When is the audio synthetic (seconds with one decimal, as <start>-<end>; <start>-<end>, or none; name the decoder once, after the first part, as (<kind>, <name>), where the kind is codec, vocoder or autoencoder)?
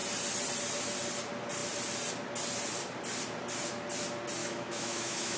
4.4-5.4 (autoencoder, DAC-VAE)